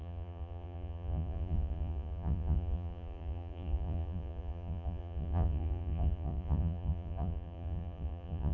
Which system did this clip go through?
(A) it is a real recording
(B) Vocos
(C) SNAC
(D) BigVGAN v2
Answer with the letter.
B